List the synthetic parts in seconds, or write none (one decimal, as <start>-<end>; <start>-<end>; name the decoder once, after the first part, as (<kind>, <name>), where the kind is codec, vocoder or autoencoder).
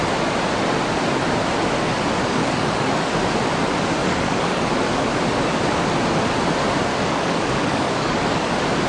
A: 2.2-3.1 (codec, DAC); 4.0-5.1; 6.9-8.5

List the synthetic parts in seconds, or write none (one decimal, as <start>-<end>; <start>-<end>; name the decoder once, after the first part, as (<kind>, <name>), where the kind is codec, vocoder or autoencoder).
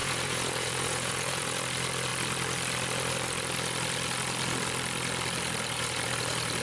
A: 0.0-1.6 (vocoder, Vocos)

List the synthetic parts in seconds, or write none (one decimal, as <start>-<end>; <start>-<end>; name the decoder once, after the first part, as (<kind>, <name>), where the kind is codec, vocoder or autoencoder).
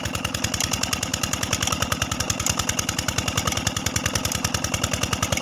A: none